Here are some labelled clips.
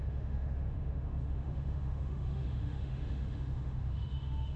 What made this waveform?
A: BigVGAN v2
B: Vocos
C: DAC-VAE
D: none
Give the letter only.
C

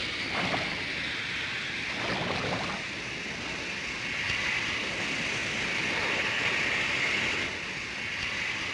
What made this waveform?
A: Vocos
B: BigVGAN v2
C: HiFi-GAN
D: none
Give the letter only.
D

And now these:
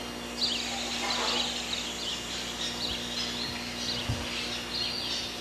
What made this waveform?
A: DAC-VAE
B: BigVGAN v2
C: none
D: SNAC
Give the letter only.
C